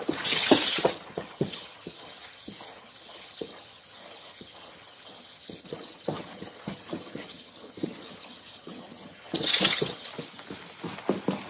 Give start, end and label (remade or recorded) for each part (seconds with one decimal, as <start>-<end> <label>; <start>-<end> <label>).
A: 0.0-10.1 remade; 10.1-11.5 recorded